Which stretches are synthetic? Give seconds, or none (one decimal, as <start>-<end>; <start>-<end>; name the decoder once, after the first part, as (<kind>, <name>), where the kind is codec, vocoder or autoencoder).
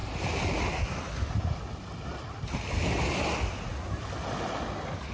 none